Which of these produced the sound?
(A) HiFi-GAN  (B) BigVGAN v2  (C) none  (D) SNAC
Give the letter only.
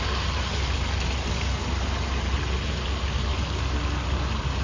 C